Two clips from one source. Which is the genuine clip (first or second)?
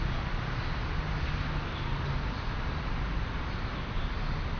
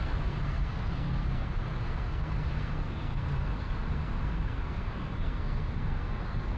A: first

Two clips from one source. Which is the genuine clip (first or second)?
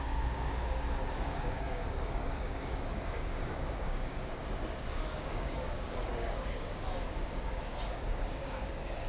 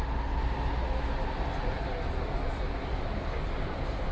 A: second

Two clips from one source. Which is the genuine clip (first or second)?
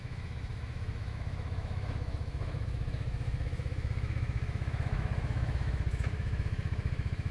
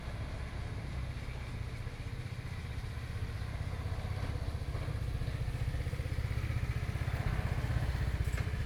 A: second